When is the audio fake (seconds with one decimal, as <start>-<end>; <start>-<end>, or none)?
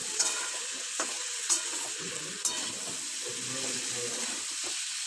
0.0-2.1